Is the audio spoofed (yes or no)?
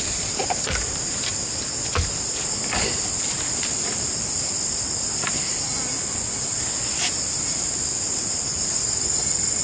no